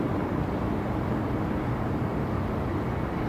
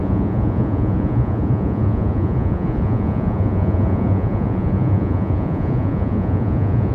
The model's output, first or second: second